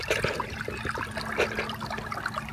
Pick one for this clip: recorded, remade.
recorded